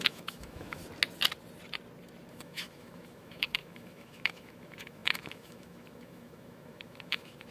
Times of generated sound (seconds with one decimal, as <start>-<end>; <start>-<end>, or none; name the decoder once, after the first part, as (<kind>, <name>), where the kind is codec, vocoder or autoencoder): 0.0-0.8 (autoencoder, DAC-VAE); 2.3-7.5